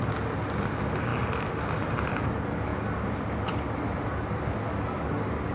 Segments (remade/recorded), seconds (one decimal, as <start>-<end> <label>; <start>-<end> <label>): 0.0-5.5 recorded